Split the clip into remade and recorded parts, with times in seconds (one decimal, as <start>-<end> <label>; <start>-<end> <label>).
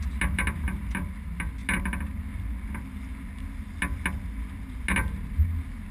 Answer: 0.0-5.9 recorded